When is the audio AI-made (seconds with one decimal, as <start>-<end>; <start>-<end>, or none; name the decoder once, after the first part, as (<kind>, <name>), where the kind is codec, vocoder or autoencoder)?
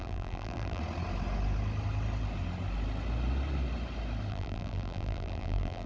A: 0.0-0.8 (vocoder, BigVGAN v2); 4.3-5.9